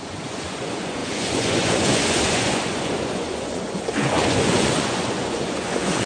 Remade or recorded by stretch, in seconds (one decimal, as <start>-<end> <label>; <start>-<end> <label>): 0.0-6.1 remade